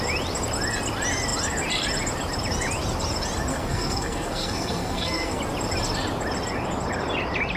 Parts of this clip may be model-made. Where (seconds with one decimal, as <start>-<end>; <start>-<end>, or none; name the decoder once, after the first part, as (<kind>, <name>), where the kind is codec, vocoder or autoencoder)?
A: 3.5-5.4 (codec, SNAC)